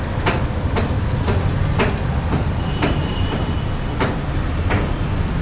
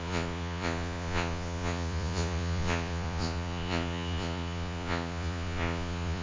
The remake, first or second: second